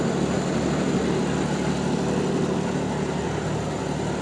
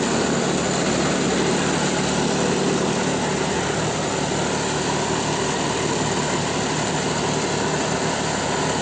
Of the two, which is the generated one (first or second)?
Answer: second